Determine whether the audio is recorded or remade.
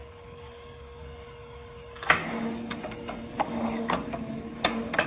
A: remade